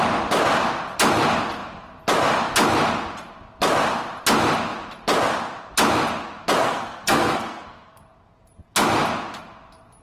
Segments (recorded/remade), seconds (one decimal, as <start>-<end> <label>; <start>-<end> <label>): 0.0-6.6 recorded; 6.6-8.0 remade; 8.0-10.0 recorded